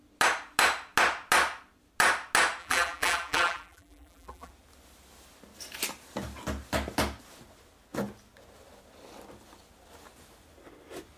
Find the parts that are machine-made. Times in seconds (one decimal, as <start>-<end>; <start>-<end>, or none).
2.6-4.5